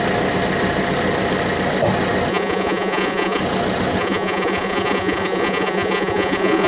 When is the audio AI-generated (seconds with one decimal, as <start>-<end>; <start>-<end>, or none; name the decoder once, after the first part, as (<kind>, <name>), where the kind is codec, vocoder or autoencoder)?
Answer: 2.3-3.4 (vocoder, Vocos); 4.0-6.7